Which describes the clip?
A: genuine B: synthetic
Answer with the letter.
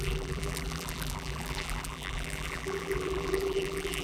B